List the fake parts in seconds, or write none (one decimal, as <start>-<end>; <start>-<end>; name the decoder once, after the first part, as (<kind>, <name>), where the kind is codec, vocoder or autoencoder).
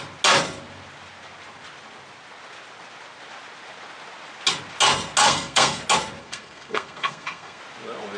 5.2-5.8 (codec, SNAC); 6.2-7.6